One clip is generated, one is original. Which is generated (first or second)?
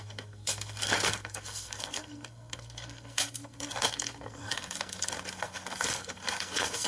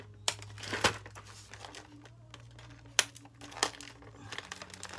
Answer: first